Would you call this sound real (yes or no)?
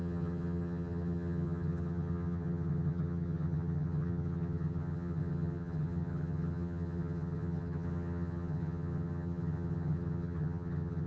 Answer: no